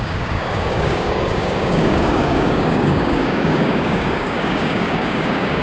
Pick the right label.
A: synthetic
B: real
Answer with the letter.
A